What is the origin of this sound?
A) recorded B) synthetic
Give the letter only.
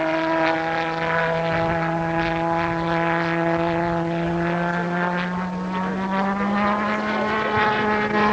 A